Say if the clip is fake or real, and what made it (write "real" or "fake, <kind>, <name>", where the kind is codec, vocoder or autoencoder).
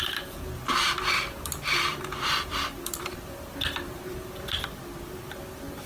fake, vocoder, BigVGAN v2